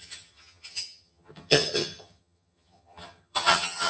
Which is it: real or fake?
fake